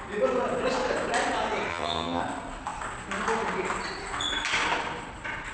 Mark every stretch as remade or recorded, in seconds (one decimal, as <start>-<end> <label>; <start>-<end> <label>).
0.0-1.7 recorded; 1.7-2.2 remade; 2.2-5.5 recorded